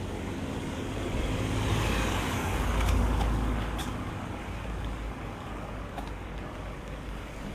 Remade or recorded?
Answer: remade